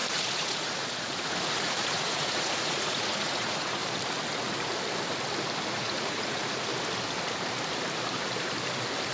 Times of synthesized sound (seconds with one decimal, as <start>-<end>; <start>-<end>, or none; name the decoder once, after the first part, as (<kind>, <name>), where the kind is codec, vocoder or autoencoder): 0.0-3.8 (vocoder, Vocos); 5.7-6.7